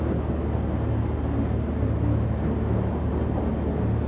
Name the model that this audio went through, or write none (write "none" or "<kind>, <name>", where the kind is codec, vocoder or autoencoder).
none